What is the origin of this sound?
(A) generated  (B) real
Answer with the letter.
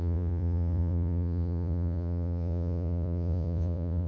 A